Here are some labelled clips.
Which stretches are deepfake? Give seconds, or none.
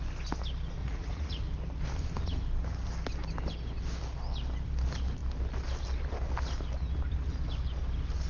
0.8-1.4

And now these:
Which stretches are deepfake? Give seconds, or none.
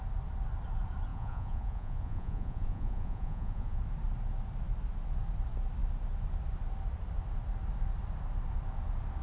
1.1-3.8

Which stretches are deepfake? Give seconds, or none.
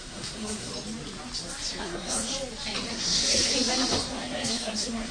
0.0-0.7; 1.8-2.3; 2.9-3.5; 4.0-5.1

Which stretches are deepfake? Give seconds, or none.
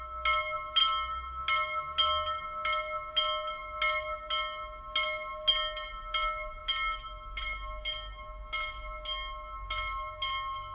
none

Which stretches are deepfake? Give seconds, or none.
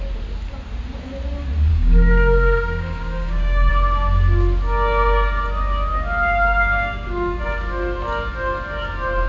1.7-3.7; 5.9-7.4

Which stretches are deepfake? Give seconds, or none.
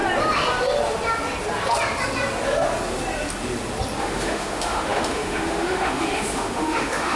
4.0-7.2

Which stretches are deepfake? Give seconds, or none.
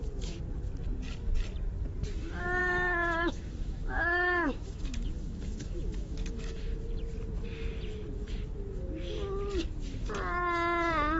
2.6-6.8